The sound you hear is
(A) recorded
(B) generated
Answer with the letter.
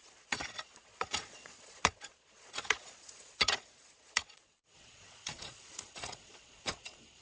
B